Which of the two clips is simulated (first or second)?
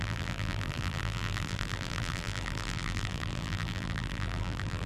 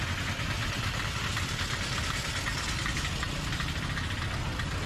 first